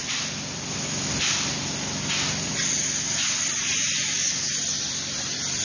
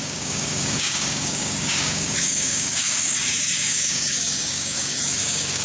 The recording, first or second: first